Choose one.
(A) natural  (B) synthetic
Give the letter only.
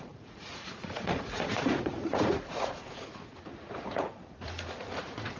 B